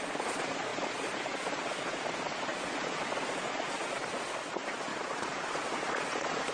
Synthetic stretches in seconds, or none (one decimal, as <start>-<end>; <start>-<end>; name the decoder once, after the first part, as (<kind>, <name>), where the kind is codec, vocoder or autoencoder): 0.0-6.5 (vocoder, Vocos)